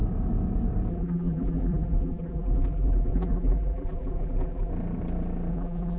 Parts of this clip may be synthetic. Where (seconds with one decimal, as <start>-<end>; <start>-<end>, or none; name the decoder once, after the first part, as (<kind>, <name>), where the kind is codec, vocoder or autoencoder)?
0.9-4.7 (vocoder, BigVGAN v2); 5.5-6.0